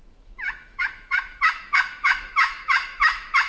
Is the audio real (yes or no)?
no